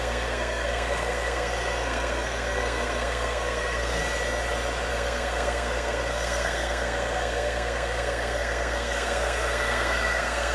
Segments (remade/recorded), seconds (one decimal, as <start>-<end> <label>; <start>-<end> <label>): 0.0-4.0 remade; 4.0-4.9 recorded; 4.9-10.5 remade